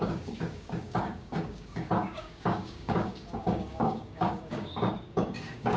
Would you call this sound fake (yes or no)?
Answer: yes